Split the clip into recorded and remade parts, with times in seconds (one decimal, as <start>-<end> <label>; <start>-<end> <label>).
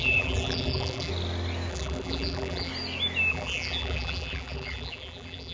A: 0.0-1.1 remade; 1.1-1.7 recorded; 1.7-2.7 remade; 2.7-3.3 recorded; 3.3-5.5 remade